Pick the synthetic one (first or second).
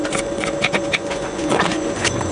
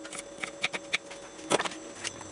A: first